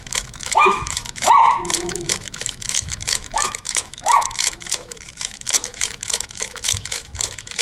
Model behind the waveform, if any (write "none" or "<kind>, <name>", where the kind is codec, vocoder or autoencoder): autoencoder, DAC-VAE